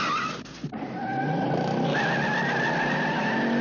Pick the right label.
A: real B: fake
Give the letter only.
A